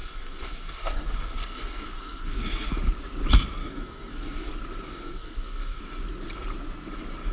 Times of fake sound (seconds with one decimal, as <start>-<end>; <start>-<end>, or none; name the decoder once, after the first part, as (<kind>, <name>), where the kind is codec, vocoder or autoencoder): 0.0-2.7 (codec, SNAC); 3.6-4.5; 4.9-5.8